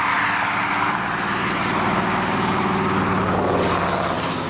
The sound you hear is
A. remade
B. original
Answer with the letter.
B